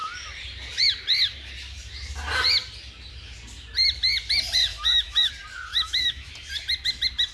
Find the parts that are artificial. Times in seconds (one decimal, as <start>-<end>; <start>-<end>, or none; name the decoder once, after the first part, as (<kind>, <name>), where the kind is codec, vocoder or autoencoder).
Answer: 4.7-5.3 (autoencoder, DAC-VAE); 5.7-6.3